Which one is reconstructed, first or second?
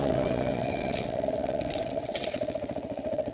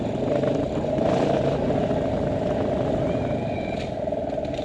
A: first